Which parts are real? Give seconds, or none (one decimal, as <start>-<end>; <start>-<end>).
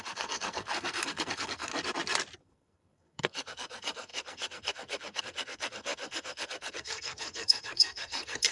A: 1.7-2.4